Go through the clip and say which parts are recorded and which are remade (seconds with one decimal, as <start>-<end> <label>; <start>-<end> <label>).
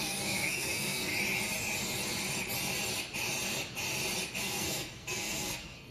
0.0-1.1 remade; 1.1-4.3 recorded; 4.3-5.9 remade